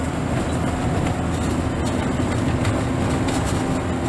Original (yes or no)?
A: yes